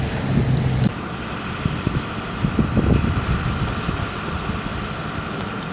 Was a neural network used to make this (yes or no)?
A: no